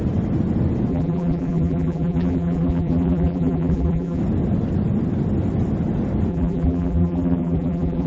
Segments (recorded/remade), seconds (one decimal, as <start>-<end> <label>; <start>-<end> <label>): 0.0-0.9 recorded; 0.9-4.2 remade; 4.2-6.3 recorded; 6.3-8.1 remade